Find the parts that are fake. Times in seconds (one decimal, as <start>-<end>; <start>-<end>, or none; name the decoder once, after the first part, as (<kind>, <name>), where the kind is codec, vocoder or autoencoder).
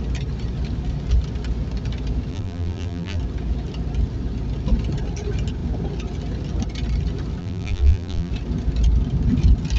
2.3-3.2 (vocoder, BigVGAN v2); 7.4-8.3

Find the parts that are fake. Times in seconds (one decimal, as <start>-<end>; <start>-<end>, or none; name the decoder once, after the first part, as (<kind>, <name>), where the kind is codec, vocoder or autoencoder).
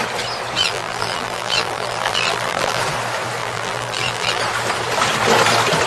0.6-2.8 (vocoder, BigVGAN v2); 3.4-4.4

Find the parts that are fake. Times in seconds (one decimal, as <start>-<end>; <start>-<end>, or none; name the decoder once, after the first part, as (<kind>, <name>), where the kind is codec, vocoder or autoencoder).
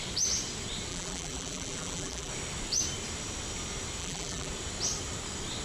0.9-2.3 (vocoder, BigVGAN v2); 4.0-4.5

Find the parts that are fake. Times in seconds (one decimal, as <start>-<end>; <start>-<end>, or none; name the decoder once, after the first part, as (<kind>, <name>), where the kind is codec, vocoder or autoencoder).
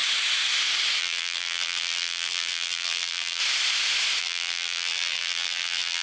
1.0-3.4 (vocoder, BigVGAN v2); 4.2-6.0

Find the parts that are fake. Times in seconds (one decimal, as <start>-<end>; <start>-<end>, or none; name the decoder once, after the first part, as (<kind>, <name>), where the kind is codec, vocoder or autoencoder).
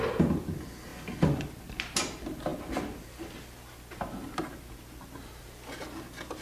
none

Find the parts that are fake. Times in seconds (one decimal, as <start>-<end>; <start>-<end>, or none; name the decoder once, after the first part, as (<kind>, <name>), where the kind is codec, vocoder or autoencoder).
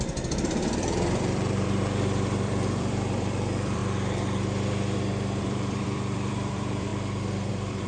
0.0-3.8 (vocoder, BigVGAN v2); 5.4-6.9; 7.5-7.9